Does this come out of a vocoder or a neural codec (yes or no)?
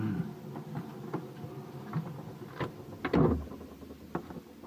no